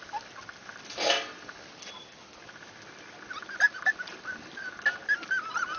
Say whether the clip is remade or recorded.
recorded